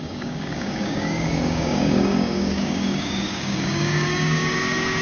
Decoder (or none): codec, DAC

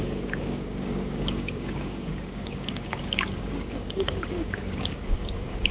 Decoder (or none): codec, DAC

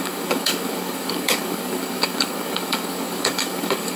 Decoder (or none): codec, DAC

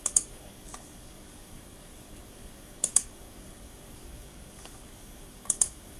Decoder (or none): codec, DAC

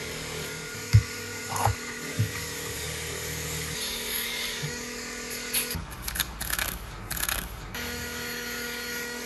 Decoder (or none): codec, DAC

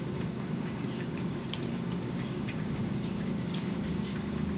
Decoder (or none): codec, DAC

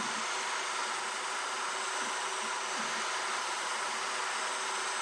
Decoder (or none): none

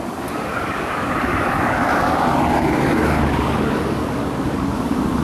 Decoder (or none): codec, DAC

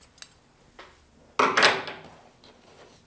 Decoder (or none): none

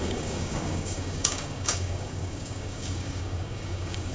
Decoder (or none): codec, DAC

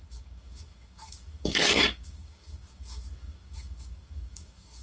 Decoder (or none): codec, DAC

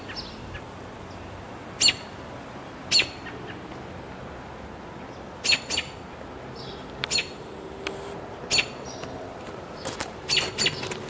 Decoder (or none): none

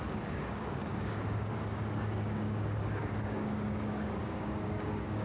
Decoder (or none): codec, DAC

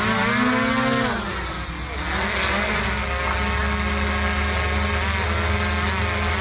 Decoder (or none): none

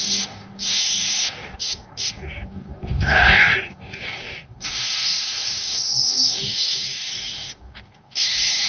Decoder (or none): codec, DAC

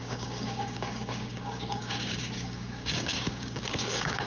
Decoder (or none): codec, DAC